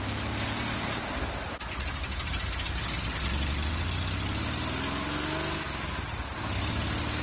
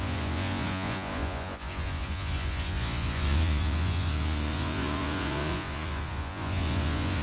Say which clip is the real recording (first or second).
first